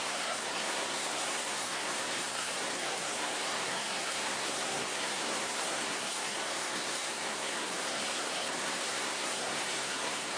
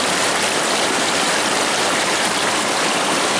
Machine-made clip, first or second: first